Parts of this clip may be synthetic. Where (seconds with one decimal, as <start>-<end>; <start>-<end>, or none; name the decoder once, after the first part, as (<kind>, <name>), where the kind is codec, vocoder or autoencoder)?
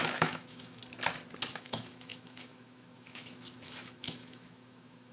0.0-0.8 (autoencoder, DAC-VAE); 1.5-5.1